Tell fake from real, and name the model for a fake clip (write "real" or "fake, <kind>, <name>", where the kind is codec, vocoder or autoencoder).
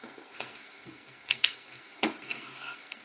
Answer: fake, codec, SNAC